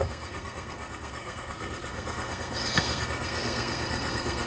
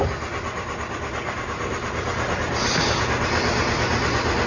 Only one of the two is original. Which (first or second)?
second